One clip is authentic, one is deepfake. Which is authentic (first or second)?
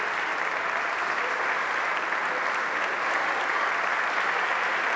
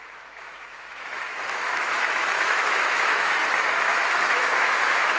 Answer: first